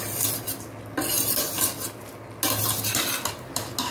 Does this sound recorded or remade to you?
recorded